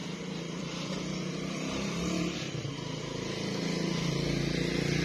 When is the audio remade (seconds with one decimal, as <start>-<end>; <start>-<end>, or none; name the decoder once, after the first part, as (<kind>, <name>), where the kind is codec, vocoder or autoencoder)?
0.0-3.0 (vocoder, BigVGAN v2)